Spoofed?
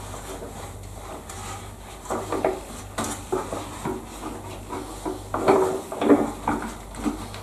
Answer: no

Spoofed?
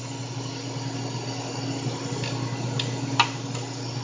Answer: no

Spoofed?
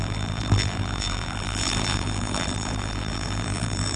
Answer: yes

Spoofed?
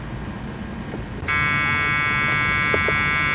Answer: no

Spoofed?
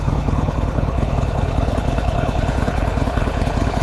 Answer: yes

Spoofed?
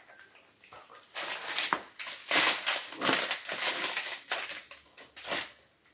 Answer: no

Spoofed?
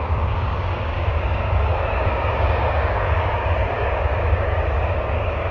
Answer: yes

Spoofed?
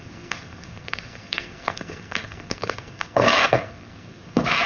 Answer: yes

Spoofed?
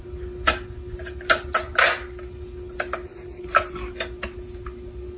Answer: no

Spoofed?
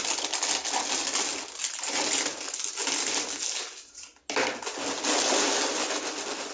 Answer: no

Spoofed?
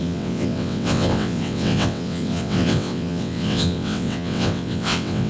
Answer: yes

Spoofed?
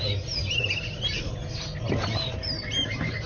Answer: no